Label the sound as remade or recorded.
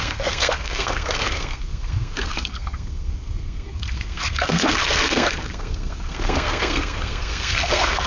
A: remade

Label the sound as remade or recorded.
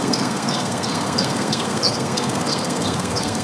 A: remade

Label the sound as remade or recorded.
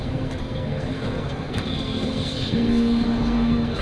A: remade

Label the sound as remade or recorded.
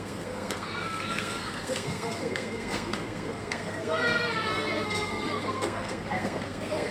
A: remade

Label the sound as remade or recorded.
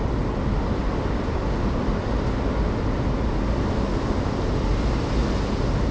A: recorded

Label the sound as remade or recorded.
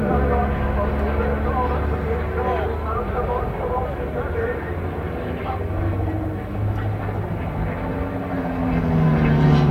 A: recorded